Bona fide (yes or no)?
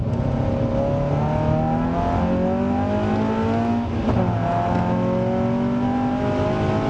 yes